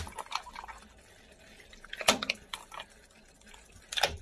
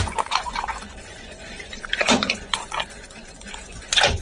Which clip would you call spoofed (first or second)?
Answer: second